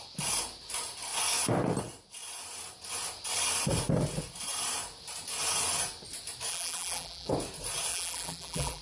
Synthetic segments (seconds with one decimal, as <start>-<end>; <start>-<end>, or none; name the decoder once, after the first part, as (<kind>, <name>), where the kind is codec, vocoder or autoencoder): 6.5-7.3 (vocoder, BigVGAN v2); 7.9-8.8